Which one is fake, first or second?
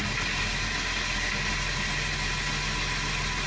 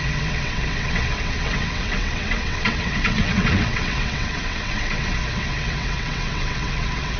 second